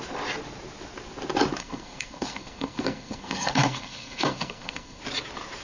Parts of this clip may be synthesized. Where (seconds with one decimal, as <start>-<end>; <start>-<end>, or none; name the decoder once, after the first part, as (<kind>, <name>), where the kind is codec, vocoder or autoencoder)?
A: 1.6-5.0 (codec, SNAC)